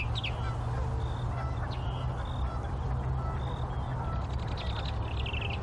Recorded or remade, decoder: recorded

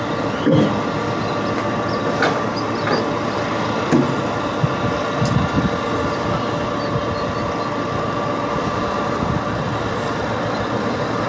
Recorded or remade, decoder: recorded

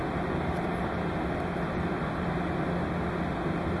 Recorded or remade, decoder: recorded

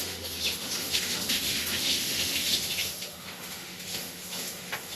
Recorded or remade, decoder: remade, autoencoder, DAC-VAE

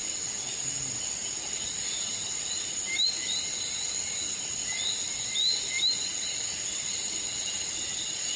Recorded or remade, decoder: recorded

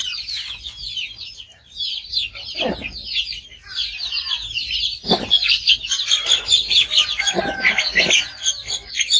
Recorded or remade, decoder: recorded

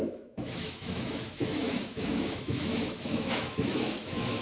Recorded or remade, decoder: remade, autoencoder, DAC-VAE